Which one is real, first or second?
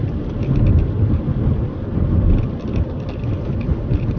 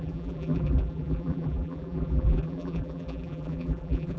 first